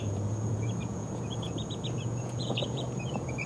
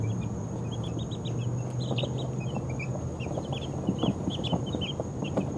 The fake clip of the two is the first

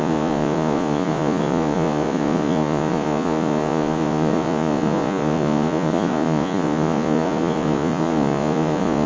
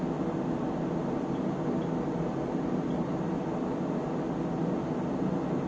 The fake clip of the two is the first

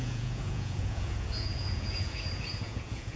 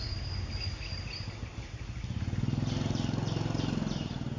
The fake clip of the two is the first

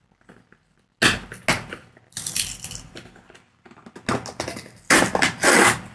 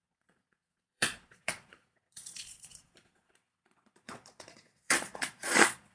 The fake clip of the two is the second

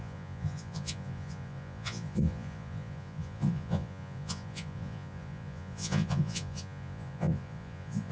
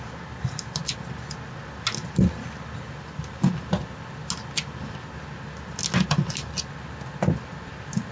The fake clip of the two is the first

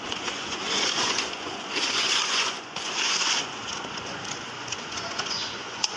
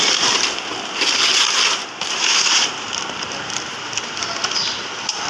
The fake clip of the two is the first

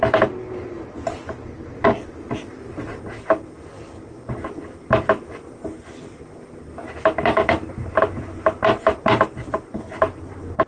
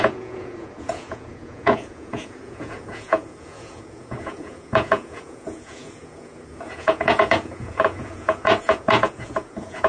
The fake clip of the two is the second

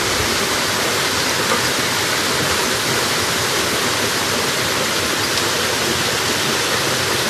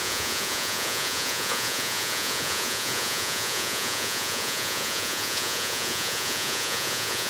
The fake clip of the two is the second